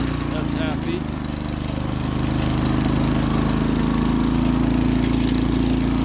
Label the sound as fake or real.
real